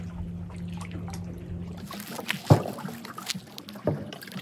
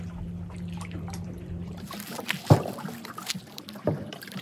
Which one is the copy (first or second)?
second